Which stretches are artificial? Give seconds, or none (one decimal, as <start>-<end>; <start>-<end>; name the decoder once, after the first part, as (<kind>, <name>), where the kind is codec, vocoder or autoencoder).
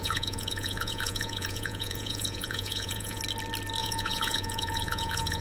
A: 0.0-3.2 (vocoder, Vocos); 3.8-5.4